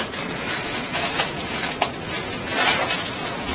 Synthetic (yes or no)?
yes